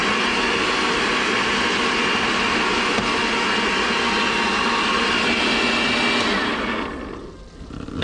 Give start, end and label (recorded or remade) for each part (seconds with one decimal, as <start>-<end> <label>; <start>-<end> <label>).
0.0-8.0 recorded